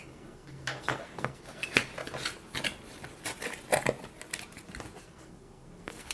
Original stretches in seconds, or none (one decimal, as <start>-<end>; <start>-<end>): 1.9-5.0